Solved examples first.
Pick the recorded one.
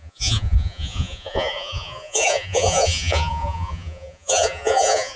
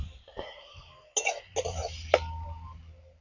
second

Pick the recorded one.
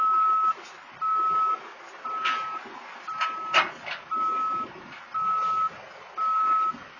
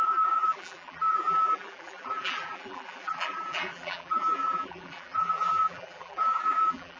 first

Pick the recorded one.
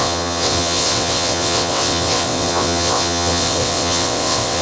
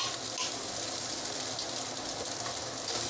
second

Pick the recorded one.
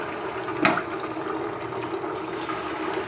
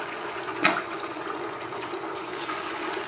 first